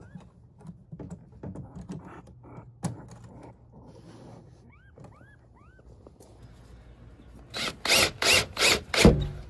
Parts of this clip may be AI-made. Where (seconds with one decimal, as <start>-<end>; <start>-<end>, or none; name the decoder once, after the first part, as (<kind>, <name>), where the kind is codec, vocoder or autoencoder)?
0.0-2.4 (vocoder, BigVGAN v2); 5.6-6.3; 8.0-9.5